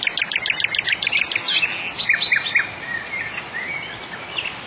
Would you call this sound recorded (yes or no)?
yes